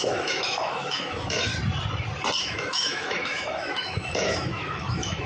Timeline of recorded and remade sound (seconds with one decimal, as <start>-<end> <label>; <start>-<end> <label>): 0.0-1.5 remade; 1.5-2.4 recorded; 2.4-5.3 remade